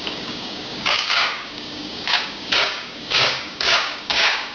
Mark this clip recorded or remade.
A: remade